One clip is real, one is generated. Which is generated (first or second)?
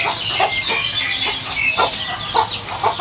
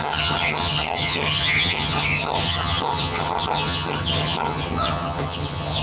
second